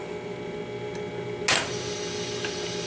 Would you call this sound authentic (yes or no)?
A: yes